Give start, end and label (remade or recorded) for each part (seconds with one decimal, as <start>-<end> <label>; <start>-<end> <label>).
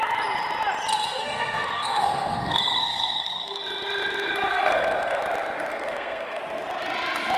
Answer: 0.0-0.9 recorded; 0.9-3.6 remade; 3.6-4.5 recorded; 4.5-5.2 remade; 5.2-5.7 recorded; 5.7-6.4 remade; 6.4-7.4 recorded